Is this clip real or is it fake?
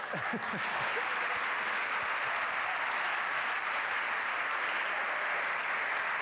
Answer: real